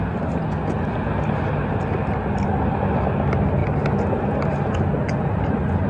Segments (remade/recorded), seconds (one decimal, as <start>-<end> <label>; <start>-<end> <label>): 0.0-5.9 recorded